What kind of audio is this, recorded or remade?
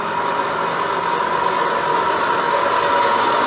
recorded